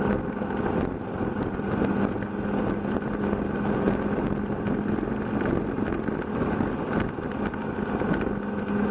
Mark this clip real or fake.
real